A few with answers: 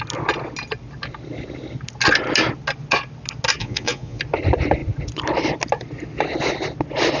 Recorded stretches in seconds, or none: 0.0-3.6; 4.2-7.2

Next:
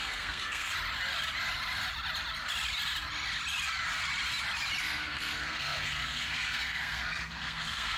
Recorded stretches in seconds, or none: 0.7-4.8

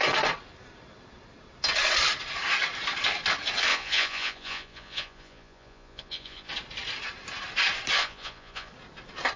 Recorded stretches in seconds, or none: 0.0-3.7; 6.5-8.0; 8.7-9.4

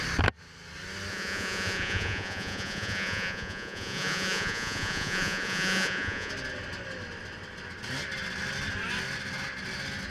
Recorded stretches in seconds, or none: 0.0-1.1; 6.3-10.1

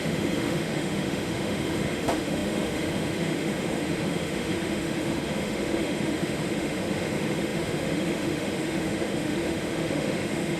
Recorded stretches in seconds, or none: none

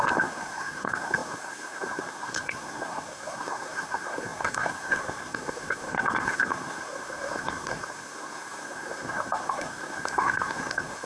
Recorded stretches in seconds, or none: none